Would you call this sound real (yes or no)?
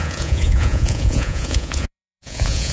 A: no